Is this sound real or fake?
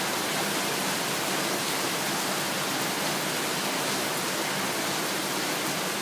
real